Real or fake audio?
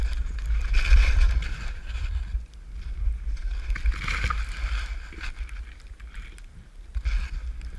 real